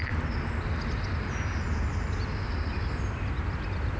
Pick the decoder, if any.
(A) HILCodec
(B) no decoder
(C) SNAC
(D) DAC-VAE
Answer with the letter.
B